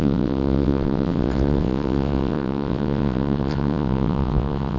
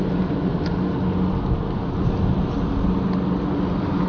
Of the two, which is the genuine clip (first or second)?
second